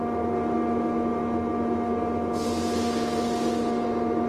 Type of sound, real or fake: real